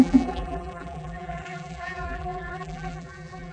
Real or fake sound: fake